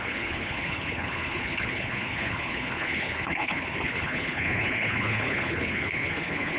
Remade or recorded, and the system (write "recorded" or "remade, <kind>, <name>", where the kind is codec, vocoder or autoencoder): remade, codec, HILCodec